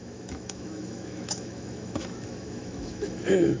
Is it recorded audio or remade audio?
remade